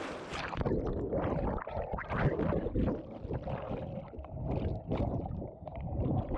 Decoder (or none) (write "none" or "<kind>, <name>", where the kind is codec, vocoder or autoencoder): none